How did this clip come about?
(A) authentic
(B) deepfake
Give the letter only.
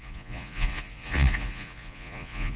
B